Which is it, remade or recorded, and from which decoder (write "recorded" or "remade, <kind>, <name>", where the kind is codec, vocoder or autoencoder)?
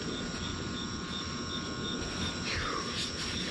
recorded